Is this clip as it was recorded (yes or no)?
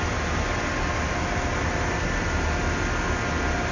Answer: yes